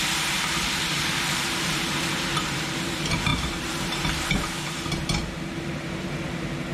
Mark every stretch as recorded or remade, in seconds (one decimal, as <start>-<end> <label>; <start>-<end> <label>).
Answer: 0.0-6.7 remade